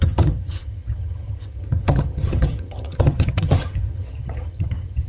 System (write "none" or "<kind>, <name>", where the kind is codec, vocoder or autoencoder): vocoder, HiFi-GAN